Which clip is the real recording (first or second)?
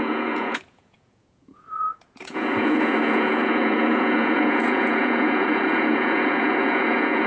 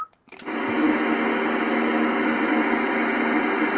second